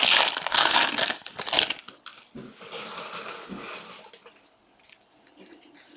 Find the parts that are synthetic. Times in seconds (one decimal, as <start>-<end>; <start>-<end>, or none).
0.5-1.2